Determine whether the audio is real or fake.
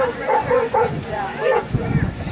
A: fake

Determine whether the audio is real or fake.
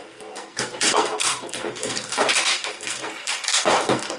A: fake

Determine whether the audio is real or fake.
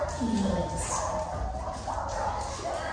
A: real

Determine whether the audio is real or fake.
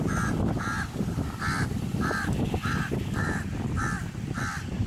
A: real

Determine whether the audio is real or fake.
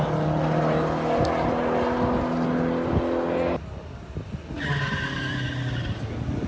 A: real